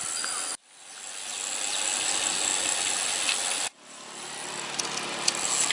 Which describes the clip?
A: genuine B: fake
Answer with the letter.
A